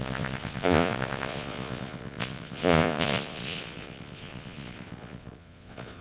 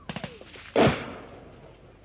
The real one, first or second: second